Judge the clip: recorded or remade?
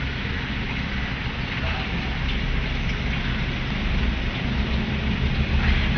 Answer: recorded